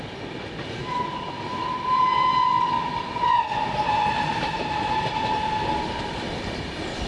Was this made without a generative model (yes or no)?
no